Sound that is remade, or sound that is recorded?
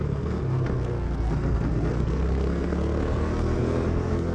remade